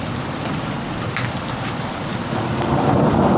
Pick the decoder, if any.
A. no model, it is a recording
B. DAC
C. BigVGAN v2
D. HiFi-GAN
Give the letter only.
A